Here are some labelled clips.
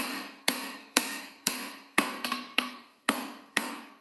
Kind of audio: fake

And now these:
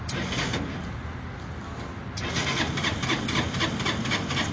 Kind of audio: real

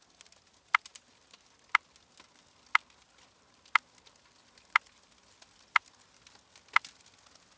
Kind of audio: real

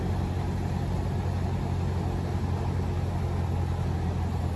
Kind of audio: real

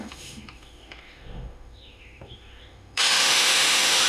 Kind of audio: fake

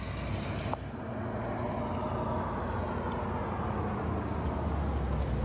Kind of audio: real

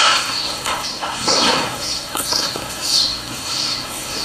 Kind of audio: fake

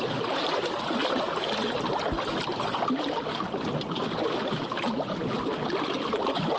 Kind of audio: real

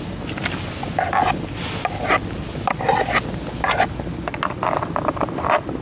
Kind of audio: real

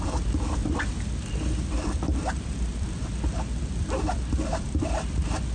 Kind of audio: fake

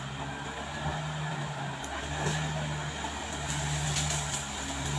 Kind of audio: real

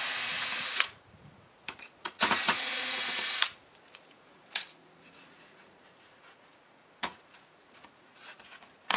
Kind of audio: fake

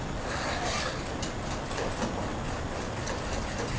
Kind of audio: real